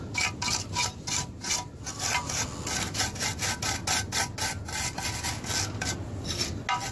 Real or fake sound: real